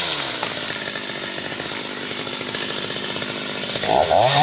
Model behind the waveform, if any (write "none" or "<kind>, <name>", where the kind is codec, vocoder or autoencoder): none